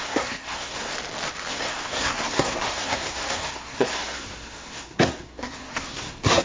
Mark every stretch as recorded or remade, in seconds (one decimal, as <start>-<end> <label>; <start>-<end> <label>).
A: 0.0-0.9 remade; 0.9-1.5 recorded; 1.5-6.4 remade